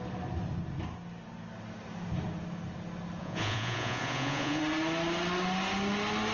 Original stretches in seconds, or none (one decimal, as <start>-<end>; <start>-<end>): 0.0-3.2; 4.6-6.3